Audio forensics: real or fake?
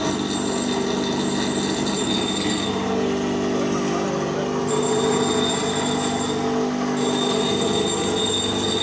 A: real